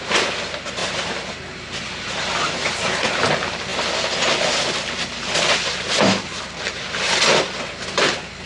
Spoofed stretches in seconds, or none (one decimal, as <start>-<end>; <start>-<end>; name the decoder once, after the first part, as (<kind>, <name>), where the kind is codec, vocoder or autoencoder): none